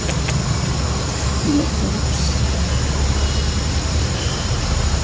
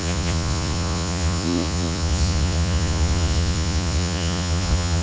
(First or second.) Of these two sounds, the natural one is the first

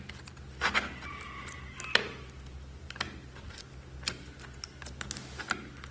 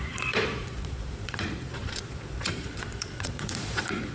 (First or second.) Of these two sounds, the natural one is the first